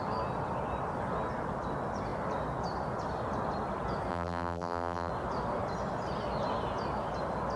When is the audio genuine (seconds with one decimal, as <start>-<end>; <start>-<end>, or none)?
0.0-4.1; 5.1-7.6

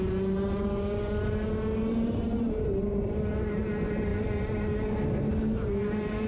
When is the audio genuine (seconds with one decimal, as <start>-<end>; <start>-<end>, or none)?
0.0-1.9; 3.2-6.3

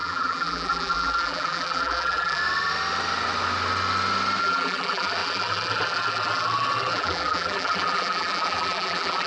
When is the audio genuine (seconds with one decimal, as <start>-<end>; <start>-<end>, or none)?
2.4-4.4